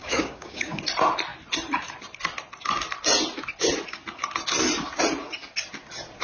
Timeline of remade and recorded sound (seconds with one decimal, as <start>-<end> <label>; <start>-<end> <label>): 0.0-0.8 remade; 0.8-6.2 recorded